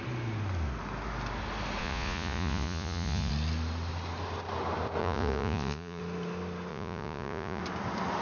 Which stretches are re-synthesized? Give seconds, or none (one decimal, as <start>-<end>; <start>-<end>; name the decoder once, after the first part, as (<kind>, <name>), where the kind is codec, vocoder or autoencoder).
1.8-3.3 (vocoder, Vocos); 5.0-6.0; 6.7-7.6